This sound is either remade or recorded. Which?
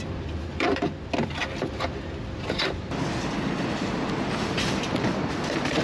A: remade